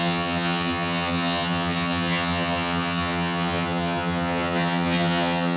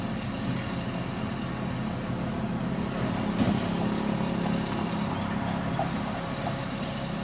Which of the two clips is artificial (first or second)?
first